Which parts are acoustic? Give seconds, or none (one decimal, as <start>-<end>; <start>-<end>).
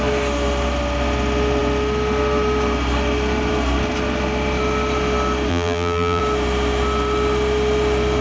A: 0.0-5.5; 6.2-8.2